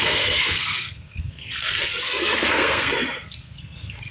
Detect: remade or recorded remade